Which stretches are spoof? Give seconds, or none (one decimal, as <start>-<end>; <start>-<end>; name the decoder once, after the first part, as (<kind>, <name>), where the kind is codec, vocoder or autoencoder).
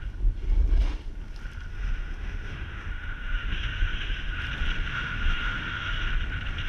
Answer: 1.7-4.4 (autoencoder, DAC-VAE); 4.9-6.0